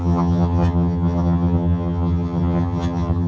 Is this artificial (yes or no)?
yes